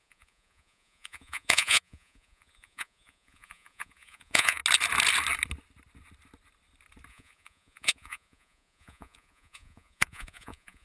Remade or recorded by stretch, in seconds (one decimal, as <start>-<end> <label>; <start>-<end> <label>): 0.0-4.6 remade; 4.6-7.1 recorded; 7.1-10.8 remade